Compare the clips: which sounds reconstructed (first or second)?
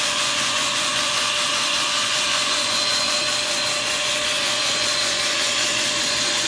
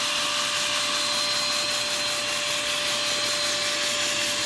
first